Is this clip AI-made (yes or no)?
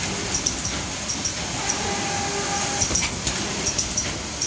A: no